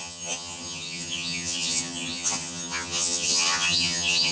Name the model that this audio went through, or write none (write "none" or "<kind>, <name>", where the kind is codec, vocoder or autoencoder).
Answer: vocoder, HiFi-GAN